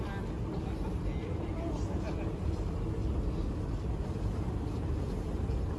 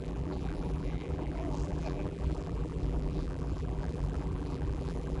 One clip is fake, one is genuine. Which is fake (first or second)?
second